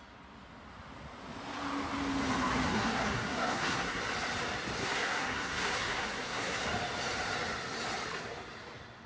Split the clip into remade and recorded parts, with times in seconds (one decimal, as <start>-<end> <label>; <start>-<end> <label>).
0.0-2.7 recorded; 2.7-4.0 remade; 4.0-4.8 recorded; 4.8-6.6 remade; 6.6-9.1 recorded